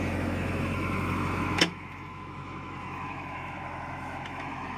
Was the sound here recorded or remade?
remade